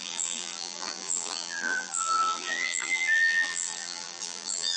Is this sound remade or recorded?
remade